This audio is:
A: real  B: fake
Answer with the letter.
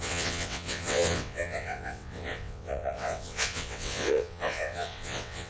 B